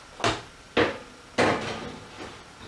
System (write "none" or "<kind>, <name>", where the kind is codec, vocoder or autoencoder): none